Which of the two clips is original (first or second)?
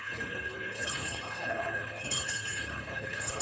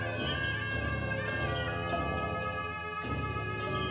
second